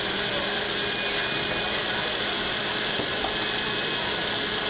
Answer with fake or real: real